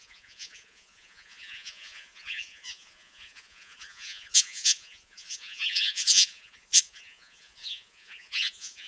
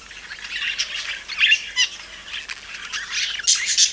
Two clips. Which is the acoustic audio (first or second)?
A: second